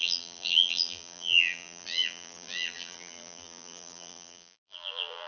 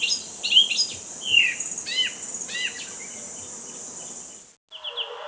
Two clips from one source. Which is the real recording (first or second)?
second